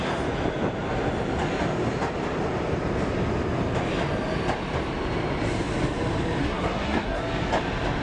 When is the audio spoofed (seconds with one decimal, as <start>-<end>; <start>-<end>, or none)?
6.4-7.2